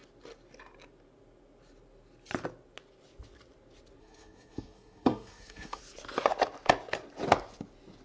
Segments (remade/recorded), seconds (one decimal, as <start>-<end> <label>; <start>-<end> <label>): 0.0-4.0 recorded; 4.0-5.8 remade; 5.8-8.0 recorded